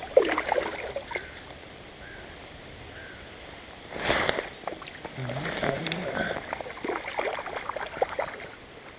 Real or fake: fake